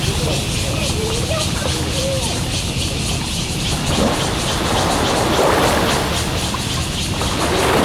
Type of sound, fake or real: real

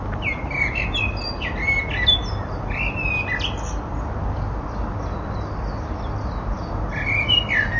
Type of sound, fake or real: real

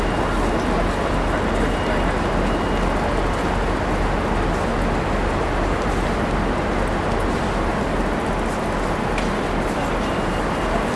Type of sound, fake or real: real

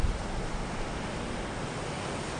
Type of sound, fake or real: real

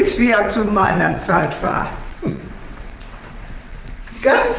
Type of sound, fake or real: fake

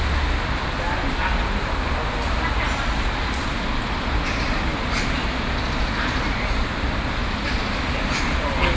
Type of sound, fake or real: real